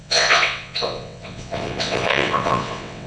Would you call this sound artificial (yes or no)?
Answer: yes